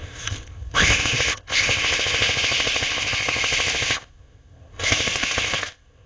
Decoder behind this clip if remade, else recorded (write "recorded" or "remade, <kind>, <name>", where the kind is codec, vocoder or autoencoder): remade, codec, ZipCodec